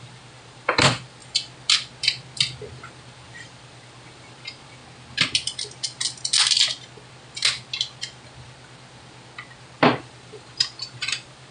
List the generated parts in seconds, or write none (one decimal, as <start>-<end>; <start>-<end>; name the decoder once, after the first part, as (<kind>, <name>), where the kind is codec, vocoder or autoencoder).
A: 0.0-1.2 (vocoder, BigVGAN v2); 2.9-4.8; 9.8-11.5